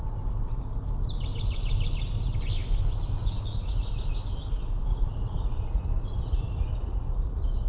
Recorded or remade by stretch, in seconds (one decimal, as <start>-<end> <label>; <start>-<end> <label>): 0.0-3.2 recorded; 3.2-3.7 remade; 3.7-4.9 recorded; 4.9-7.7 remade